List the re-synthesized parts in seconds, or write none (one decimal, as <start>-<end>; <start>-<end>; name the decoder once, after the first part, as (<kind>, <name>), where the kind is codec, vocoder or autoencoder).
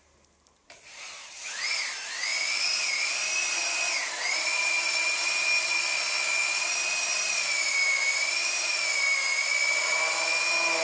2.3-3.3 (vocoder, BigVGAN v2); 4.0-6.4